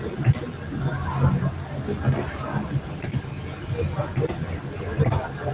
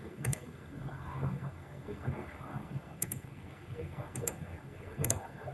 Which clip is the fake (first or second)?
second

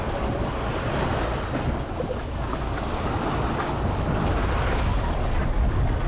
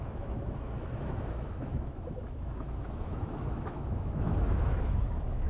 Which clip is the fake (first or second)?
second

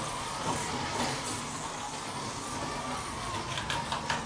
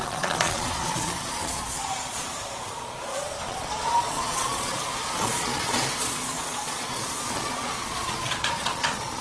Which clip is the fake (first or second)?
second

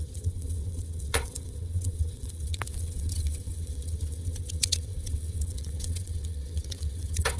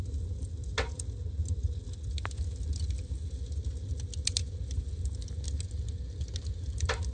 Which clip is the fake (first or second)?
first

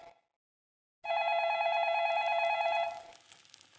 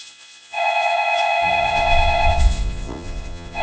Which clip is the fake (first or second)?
second